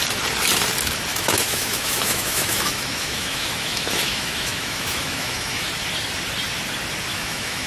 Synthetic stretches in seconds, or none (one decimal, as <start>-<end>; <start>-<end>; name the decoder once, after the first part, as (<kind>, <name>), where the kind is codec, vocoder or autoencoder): 1.1-5.7 (autoencoder, DAC-VAE); 7.1-7.7